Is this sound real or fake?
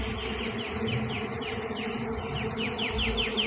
real